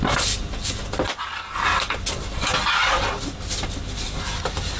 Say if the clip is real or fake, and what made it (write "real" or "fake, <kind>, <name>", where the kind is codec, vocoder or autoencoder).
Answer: real